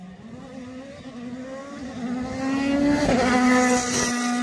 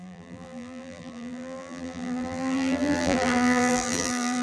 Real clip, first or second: first